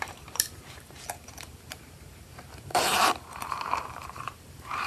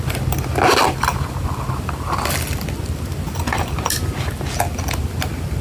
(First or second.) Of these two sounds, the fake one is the first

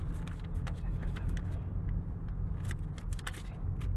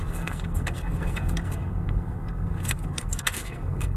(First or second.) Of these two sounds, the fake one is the second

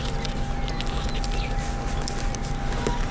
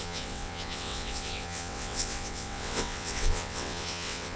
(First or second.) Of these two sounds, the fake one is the second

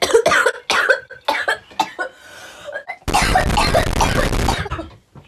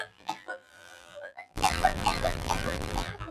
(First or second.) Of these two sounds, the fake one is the second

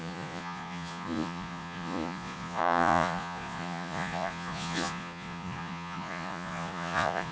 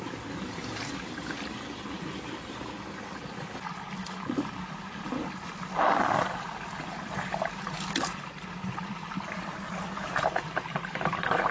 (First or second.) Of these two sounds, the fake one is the first